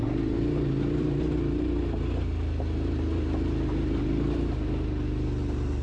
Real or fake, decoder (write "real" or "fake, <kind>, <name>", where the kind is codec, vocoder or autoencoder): real